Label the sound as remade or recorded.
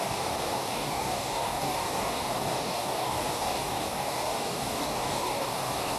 remade